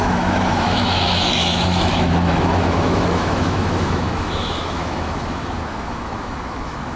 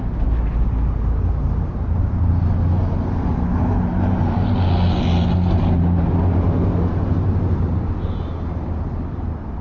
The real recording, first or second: second